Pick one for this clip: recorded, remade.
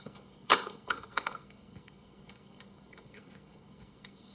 remade